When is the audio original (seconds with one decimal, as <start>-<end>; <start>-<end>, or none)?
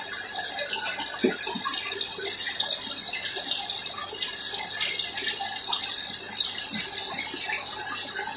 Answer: 0.0-8.4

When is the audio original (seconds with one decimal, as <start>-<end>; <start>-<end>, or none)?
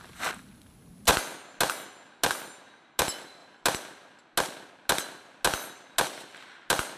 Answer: 0.0-7.0